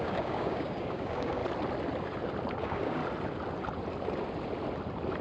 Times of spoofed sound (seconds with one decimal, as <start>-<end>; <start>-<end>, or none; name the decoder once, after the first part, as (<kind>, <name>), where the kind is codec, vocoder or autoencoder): 0.0-1.4 (codec, DAC); 2.6-3.0